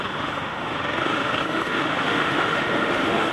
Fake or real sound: fake